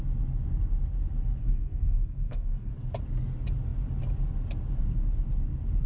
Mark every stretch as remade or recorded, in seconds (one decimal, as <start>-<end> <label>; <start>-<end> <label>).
0.0-1.4 recorded; 1.4-2.7 remade; 2.7-5.9 recorded